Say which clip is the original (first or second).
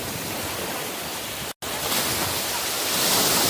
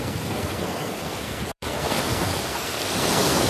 first